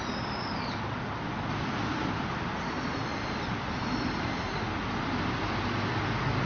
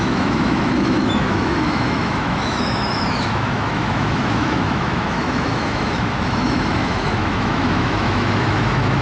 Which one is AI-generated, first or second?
second